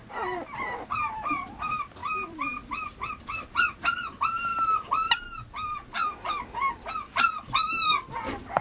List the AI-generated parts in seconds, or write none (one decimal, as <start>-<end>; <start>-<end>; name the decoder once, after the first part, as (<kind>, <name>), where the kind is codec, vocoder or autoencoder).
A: 2.0-3.1 (vocoder, BigVGAN v2)